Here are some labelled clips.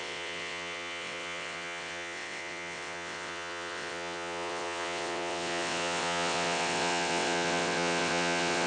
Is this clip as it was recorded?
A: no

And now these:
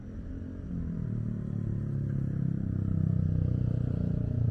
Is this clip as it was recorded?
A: no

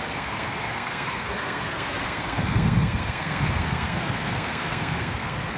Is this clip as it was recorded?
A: no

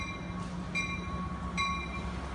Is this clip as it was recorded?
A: yes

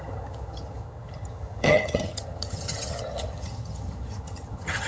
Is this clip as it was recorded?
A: no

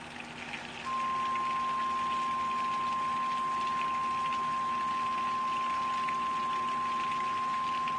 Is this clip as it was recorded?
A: yes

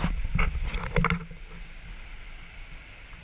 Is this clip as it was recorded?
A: no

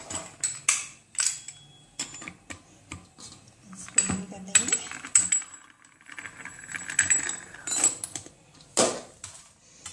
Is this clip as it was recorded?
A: yes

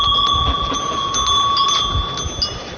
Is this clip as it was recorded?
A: yes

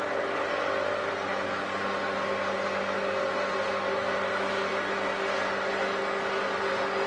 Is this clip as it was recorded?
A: yes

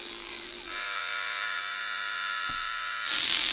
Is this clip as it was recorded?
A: no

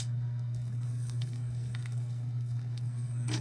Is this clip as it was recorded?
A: no